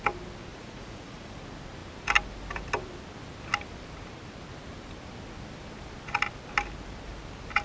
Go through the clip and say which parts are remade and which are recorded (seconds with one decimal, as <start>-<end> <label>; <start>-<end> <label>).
0.0-0.5 recorded; 0.5-1.3 remade; 1.3-7.6 recorded